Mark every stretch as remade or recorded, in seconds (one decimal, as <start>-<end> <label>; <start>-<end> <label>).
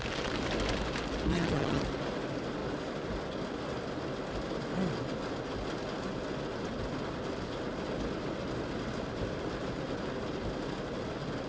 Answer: 0.0-1.3 recorded; 1.3-1.8 remade; 1.8-11.5 recorded